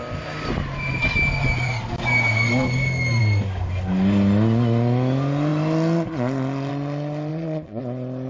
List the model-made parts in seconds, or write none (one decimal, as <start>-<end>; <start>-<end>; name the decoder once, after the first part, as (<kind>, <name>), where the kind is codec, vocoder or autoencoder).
7.3-7.8 (vocoder, Vocos)